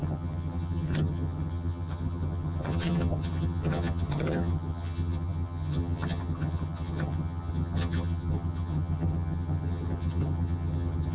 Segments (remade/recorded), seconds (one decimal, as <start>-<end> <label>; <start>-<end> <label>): 0.0-11.1 remade